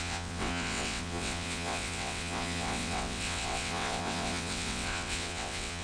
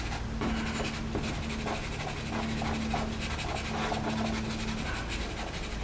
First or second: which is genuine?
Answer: second